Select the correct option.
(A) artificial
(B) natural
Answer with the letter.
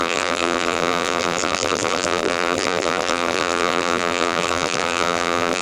A